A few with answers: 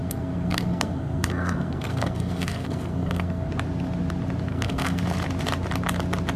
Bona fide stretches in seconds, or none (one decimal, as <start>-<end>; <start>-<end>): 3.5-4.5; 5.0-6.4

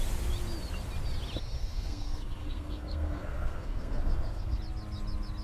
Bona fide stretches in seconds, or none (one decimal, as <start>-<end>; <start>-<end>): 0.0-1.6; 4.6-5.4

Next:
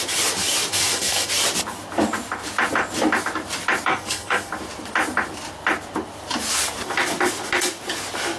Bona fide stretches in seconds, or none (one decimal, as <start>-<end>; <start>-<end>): 0.0-0.7; 1.3-3.9; 4.5-8.4